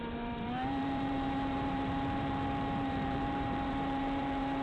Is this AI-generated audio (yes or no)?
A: yes